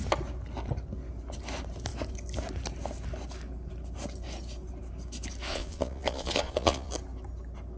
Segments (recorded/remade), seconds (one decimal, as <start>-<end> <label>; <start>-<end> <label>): 0.0-5.5 recorded; 5.5-6.9 remade; 6.9-7.8 recorded